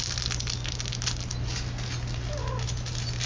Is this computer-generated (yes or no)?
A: no